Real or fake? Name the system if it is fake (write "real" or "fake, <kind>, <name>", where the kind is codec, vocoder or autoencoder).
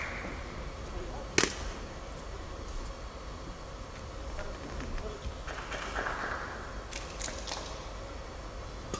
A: real